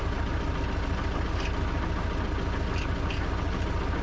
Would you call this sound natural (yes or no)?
yes